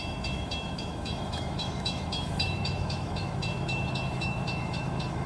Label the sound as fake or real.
fake